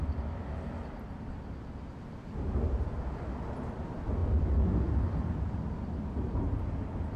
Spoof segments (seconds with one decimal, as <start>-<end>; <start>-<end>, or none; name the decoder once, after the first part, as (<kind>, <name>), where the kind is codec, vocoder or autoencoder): none